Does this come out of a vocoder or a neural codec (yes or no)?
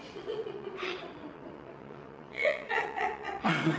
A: yes